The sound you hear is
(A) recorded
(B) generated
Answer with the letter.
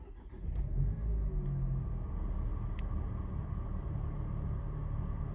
A